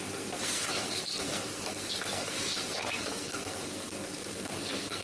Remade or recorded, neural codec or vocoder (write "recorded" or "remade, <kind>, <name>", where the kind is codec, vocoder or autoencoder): remade, codec, SNAC